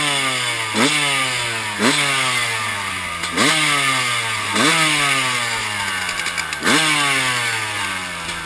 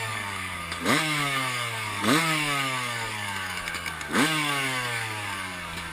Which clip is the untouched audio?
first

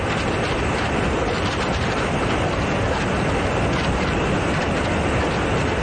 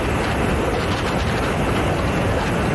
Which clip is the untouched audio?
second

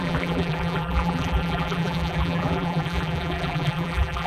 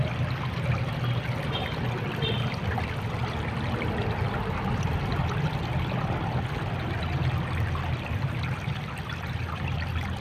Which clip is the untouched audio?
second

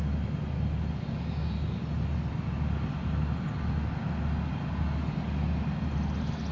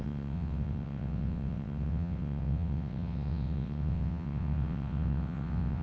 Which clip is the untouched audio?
first